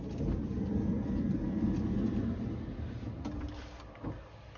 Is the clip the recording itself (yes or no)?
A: yes